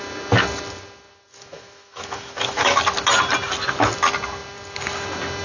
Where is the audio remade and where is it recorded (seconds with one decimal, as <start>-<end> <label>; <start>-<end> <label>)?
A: 0.0-1.3 recorded; 1.3-2.8 remade; 2.8-5.4 recorded